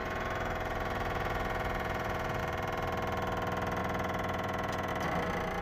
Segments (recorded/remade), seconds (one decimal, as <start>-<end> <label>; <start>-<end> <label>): 0.0-2.4 remade; 2.4-3.8 recorded; 3.8-4.9 remade; 4.9-5.6 recorded